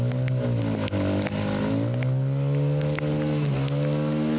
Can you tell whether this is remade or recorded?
recorded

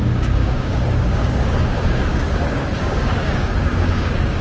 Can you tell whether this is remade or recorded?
remade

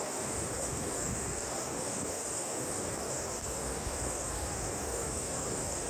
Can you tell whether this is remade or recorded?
remade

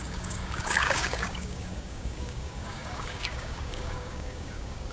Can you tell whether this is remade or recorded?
remade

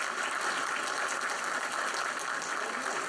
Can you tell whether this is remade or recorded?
recorded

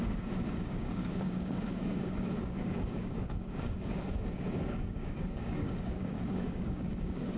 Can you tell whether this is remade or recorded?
remade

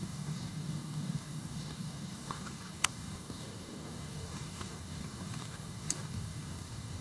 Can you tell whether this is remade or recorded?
remade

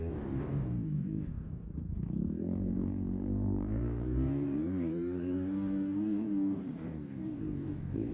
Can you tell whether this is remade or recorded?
remade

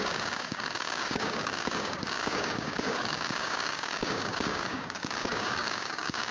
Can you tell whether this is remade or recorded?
remade